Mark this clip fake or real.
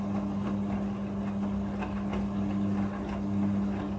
real